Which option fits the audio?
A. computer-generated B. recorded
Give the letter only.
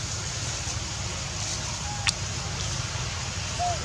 B